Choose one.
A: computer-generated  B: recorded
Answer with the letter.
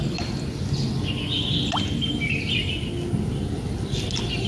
B